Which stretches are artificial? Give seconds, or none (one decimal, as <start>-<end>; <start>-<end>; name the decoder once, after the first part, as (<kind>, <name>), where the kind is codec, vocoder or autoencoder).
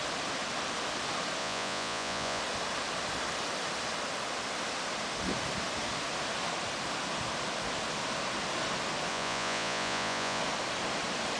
1.4-2.4 (vocoder, Vocos); 9.1-10.4